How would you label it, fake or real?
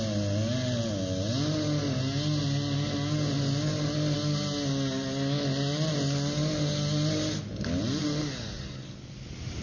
real